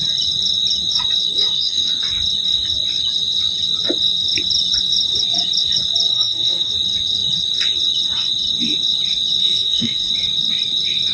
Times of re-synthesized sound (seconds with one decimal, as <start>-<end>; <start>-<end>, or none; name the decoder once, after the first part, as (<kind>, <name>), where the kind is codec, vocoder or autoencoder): 1.3-1.9 (codec, SNAC); 6.1-6.7; 9.4-10.1